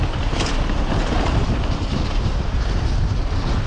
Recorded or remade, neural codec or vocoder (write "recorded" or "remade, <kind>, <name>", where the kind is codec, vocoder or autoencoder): remade, vocoder, BigVGAN v2